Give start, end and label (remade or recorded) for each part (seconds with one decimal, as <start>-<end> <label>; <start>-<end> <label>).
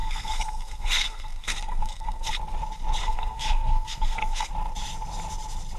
0.0-2.3 remade; 2.3-3.0 recorded; 3.0-4.5 remade; 4.5-5.8 recorded